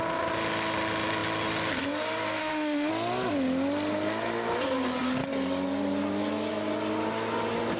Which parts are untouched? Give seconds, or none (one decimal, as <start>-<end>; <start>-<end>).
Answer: 0.0-2.4; 2.9-7.8